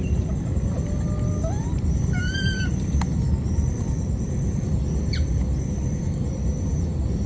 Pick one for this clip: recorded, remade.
remade